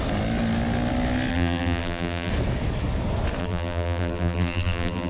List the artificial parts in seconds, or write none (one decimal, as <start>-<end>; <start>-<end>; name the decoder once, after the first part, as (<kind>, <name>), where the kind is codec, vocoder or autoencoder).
1.3-2.3 (vocoder, BigVGAN v2); 3.4-5.1